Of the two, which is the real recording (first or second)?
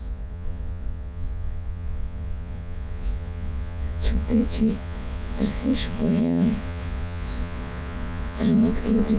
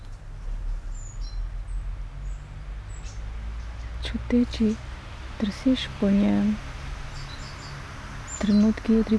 second